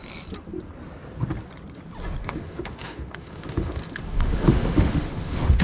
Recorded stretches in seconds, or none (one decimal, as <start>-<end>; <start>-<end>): 0.0-2.2